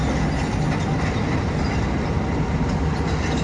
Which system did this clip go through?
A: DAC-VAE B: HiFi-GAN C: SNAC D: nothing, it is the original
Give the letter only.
D